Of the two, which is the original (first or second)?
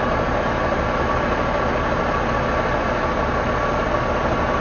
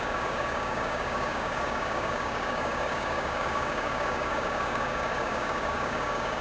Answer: first